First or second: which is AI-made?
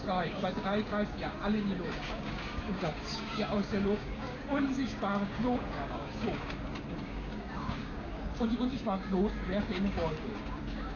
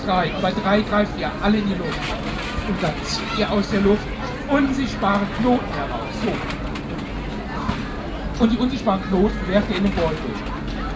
first